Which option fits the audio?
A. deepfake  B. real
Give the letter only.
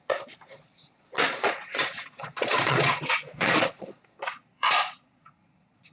A